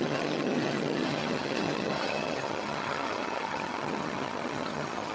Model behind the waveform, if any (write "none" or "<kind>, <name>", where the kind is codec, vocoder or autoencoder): vocoder, HiFi-GAN